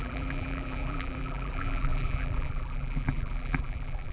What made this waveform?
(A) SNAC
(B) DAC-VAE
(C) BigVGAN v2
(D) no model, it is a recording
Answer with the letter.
C